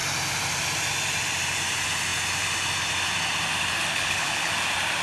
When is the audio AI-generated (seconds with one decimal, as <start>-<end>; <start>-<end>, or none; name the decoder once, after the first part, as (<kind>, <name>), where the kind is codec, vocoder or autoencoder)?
3.9-4.5 (codec, HILCodec)